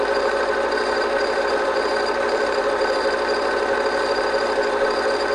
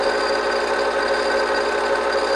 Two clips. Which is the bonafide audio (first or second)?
second